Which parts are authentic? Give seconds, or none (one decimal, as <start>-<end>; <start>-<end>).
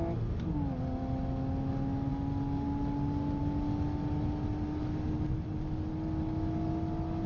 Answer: 0.0-7.3